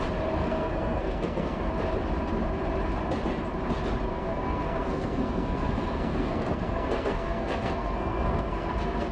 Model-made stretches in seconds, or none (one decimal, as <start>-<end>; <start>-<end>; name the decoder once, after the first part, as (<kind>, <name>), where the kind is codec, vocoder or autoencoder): 0.4-1.7 (codec, SNAC); 4.1-9.1